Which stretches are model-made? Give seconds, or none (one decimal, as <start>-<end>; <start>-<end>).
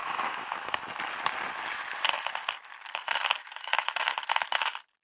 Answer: 0.0-0.8; 3.4-3.9